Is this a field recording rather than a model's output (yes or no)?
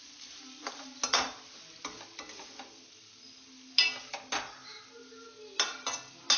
yes